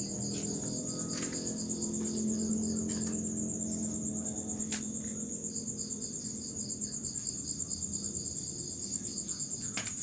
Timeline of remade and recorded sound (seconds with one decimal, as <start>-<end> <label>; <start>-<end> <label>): 0.0-9.1 recorded; 9.1-10.0 remade